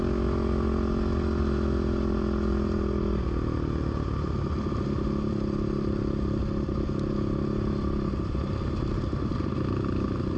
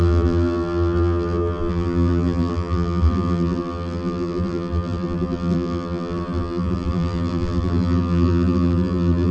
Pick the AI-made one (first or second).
second